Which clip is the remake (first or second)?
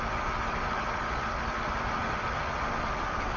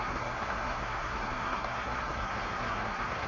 second